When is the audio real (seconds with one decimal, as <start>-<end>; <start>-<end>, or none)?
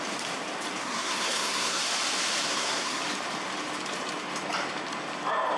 0.0-0.8; 1.8-2.5; 3.0-5.6